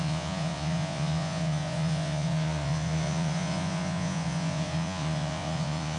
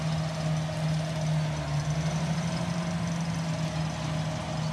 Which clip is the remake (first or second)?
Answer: first